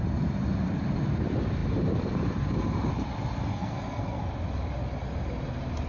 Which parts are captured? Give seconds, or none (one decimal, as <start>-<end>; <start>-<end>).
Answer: 0.0-3.5; 4.2-5.9